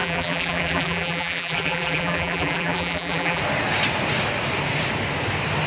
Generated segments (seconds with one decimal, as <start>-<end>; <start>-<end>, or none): 0.0-3.4